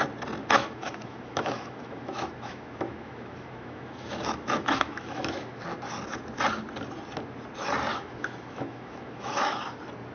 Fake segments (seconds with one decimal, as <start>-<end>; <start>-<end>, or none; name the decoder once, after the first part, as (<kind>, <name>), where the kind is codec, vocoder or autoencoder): 0.4-5.6 (autoencoder, DAC-VAE); 7.9-9.6